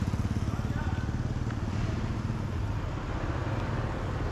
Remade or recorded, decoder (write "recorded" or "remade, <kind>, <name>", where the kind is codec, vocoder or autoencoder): recorded